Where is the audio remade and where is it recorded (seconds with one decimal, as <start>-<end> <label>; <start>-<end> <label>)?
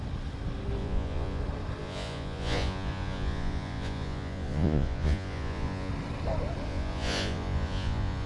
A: 0.0-0.8 recorded; 0.8-1.4 remade; 1.4-1.8 recorded; 1.8-5.9 remade; 5.9-6.7 recorded; 6.7-8.3 remade